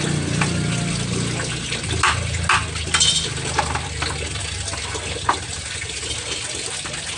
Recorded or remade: recorded